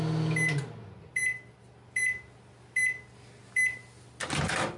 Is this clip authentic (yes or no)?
yes